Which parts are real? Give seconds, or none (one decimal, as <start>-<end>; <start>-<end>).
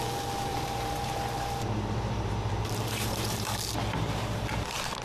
0.0-0.5; 3.5-5.0